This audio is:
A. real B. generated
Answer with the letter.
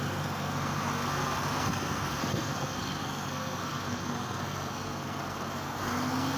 B